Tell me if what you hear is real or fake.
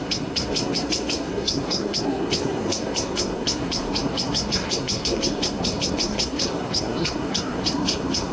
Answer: fake